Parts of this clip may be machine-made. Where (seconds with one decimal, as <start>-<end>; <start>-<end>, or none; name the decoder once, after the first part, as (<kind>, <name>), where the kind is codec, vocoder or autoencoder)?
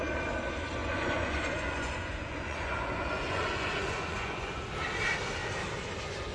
0.8-4.6 (vocoder, Vocos)